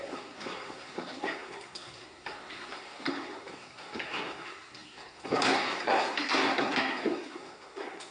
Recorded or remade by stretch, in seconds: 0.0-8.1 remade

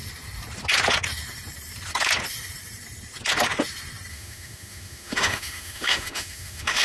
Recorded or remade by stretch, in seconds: 0.0-4.1 recorded; 4.1-6.8 remade